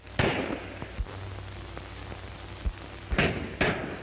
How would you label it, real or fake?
real